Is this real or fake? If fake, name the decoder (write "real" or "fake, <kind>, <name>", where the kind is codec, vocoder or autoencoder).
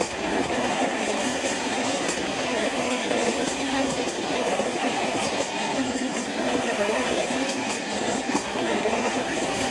fake, codec, SNAC